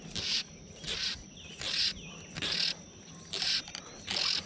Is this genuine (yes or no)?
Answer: yes